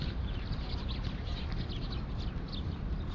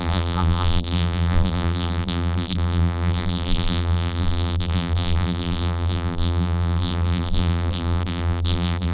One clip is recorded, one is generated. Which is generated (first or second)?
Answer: second